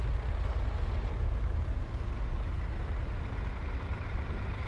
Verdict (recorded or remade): recorded